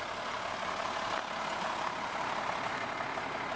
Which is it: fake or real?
real